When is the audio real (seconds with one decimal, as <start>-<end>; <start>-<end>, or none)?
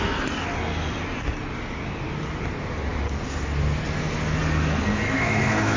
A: 0.0-4.9